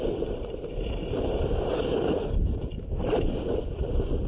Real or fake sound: real